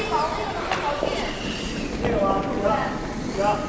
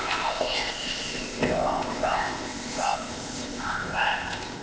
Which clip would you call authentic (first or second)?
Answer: first